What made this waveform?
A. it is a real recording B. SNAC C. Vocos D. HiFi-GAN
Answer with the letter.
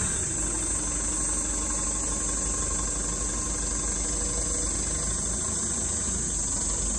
A